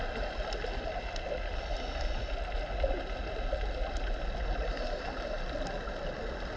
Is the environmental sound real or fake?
real